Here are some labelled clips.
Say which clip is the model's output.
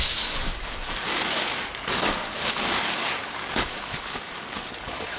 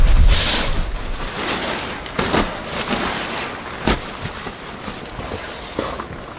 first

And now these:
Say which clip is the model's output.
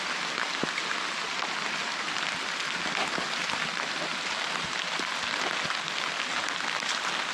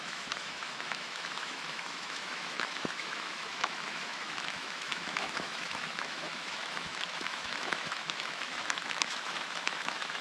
second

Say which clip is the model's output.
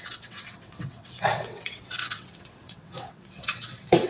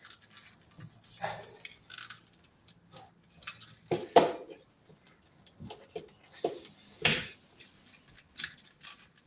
first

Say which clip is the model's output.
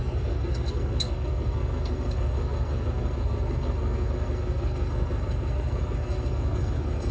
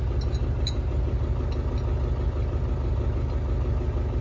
first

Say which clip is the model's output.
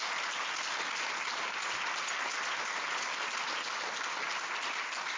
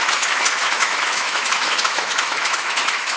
second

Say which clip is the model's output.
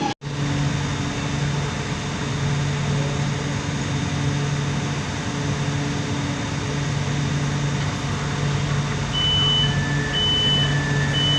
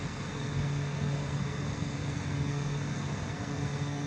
second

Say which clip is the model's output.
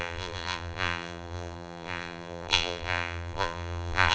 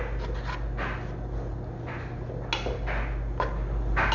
first